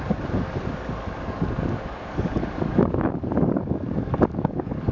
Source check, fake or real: fake